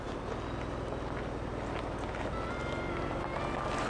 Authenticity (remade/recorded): recorded